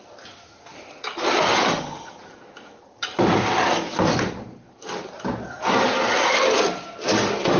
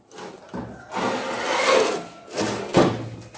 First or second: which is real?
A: second